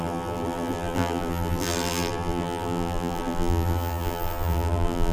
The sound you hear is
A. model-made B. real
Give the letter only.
A